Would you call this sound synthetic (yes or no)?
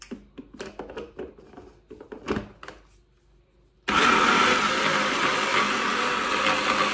no